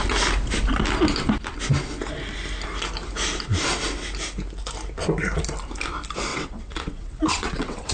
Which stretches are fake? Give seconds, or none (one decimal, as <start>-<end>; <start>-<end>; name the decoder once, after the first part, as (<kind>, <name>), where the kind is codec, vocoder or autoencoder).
6.3-7.9 (vocoder, WaveNeXt)